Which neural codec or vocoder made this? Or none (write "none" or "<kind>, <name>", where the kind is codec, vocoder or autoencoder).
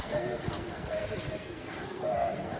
codec, SNAC